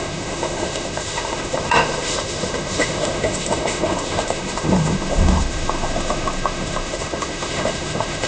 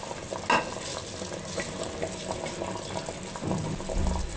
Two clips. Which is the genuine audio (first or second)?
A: second